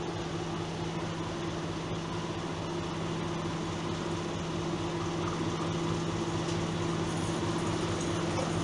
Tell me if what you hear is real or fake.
real